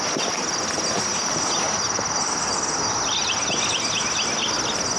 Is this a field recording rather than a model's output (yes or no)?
yes